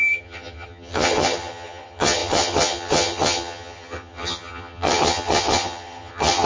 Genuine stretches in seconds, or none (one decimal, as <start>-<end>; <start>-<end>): none